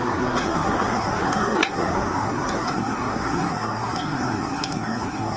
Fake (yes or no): yes